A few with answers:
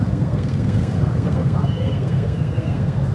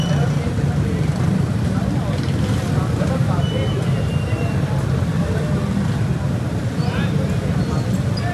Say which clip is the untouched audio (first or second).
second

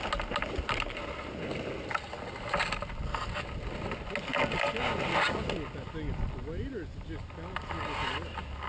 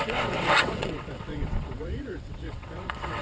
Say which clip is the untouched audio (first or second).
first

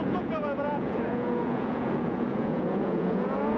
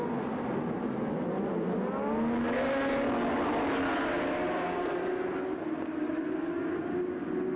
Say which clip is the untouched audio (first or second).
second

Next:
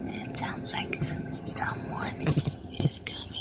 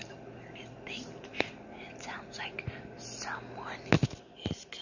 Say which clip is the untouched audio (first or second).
second